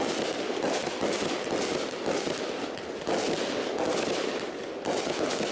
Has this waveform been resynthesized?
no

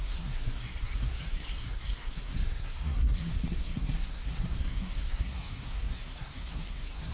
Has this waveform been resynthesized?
yes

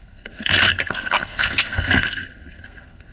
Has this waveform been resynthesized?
yes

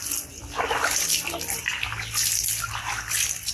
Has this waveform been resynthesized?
no